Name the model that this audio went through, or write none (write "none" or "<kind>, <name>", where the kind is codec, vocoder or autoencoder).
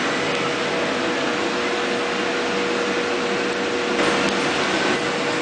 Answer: none